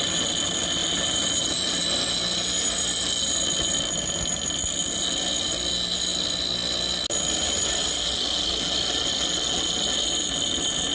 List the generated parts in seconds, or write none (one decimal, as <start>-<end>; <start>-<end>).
none